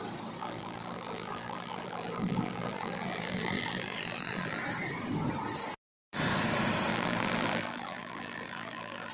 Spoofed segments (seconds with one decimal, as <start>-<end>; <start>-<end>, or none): 0.4-4.6; 6.9-9.1